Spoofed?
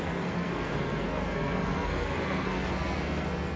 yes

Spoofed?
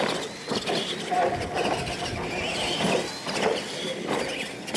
no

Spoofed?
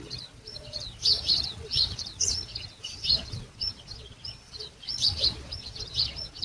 yes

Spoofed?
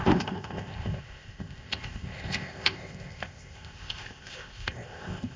yes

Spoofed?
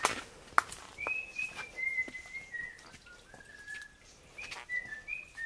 no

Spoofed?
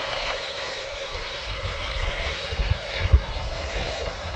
yes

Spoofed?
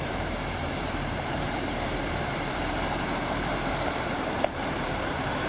yes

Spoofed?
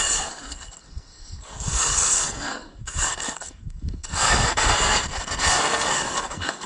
yes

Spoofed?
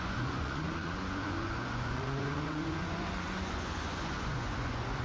yes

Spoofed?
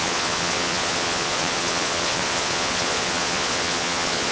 yes